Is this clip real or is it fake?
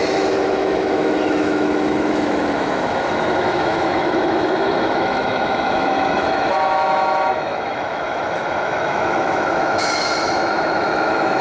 fake